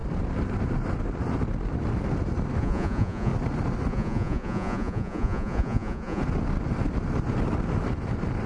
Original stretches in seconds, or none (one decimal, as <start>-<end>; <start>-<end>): 0.0-2.6; 3.3-3.9; 6.2-8.5